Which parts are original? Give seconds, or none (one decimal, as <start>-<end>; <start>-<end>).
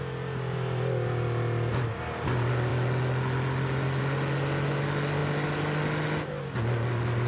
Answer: 0.0-7.3